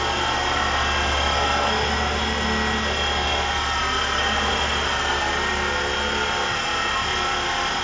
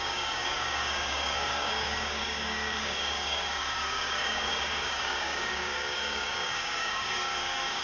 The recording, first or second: first